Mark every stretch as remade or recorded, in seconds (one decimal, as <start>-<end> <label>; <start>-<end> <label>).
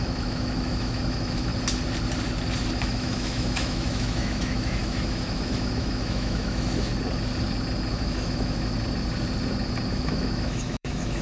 0.0-1.5 remade; 1.5-2.8 recorded; 2.8-6.9 remade; 6.9-7.9 recorded; 7.9-8.7 remade; 8.7-9.9 recorded; 9.9-11.2 remade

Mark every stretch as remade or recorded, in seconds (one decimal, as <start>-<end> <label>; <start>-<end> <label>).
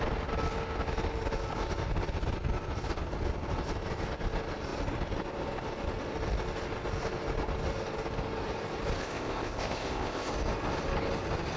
0.0-9.0 recorded; 9.0-10.3 remade; 10.3-11.6 recorded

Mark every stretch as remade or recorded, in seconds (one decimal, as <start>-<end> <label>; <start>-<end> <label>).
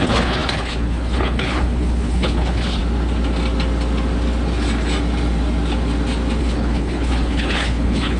0.0-2.8 remade; 2.8-6.4 recorded; 6.4-8.2 remade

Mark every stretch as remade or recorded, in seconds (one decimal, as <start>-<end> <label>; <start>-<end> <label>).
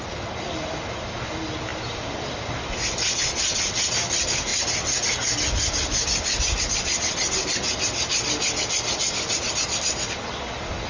0.0-10.9 recorded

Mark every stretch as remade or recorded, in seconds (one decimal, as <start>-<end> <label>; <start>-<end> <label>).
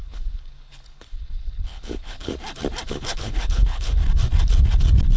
0.0-2.3 remade; 2.3-2.9 recorded; 2.9-4.0 remade; 4.0-5.2 recorded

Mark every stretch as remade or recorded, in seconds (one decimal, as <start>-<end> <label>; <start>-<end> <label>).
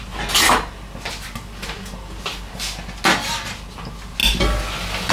0.0-5.1 recorded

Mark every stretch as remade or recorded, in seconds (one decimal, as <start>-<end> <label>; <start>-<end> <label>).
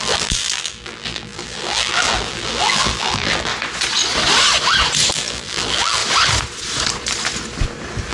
0.0-3.5 remade; 3.5-5.1 recorded; 5.1-6.0 remade; 6.0-8.1 recorded